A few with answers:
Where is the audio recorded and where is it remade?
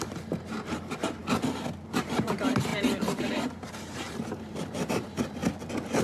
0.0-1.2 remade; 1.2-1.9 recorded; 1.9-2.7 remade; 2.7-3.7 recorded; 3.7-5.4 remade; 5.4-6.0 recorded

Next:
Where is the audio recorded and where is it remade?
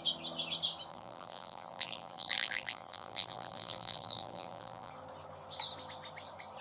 0.0-0.9 recorded; 0.9-4.9 remade; 4.9-6.6 recorded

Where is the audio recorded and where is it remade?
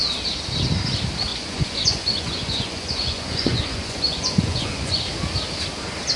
0.0-1.3 recorded; 1.3-5.0 remade; 5.0-6.2 recorded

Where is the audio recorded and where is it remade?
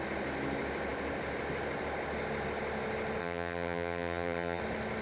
0.0-3.2 recorded; 3.2-4.6 remade; 4.6-5.0 recorded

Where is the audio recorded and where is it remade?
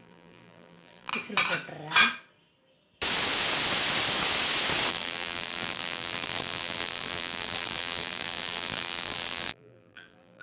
0.0-1.1 remade; 1.1-4.9 recorded; 4.9-10.4 remade